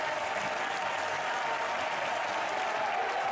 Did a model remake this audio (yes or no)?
yes